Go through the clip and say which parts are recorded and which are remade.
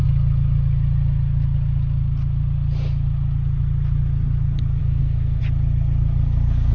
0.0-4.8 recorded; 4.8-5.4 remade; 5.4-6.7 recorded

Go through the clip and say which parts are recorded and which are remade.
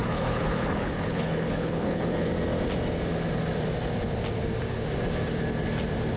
0.0-2.3 remade; 2.3-6.2 recorded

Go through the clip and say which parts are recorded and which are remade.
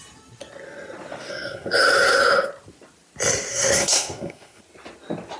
0.0-1.3 recorded; 1.3-2.2 remade; 2.2-3.5 recorded; 3.5-4.6 remade; 4.6-5.4 recorded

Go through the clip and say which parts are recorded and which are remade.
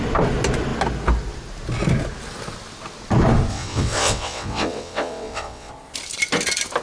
0.0-3.5 recorded; 3.5-5.7 remade; 5.7-6.8 recorded